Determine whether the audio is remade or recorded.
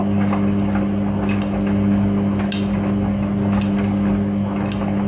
recorded